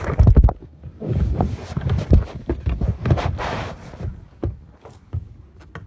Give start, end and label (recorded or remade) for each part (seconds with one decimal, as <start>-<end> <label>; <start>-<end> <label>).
0.0-0.6 recorded; 0.6-1.4 remade; 1.4-4.1 recorded; 4.1-5.3 remade; 5.3-5.9 recorded